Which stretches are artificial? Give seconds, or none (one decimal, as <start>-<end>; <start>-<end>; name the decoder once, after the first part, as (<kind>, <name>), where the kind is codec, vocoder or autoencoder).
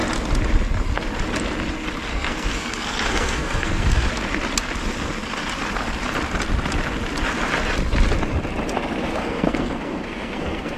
2.1-4.1 (codec, SNAC); 9.2-10.8